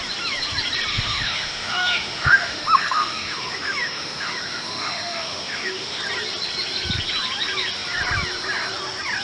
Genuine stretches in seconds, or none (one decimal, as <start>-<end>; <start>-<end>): 0.0-0.9; 6.0-9.2